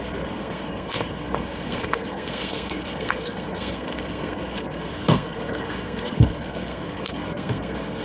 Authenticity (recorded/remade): remade